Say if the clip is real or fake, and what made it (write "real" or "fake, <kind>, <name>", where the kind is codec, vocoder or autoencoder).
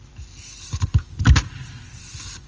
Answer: fake, vocoder, BigVGAN v2